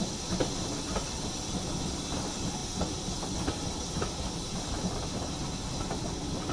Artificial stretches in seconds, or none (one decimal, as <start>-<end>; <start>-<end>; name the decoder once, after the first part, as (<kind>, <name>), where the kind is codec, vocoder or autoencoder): none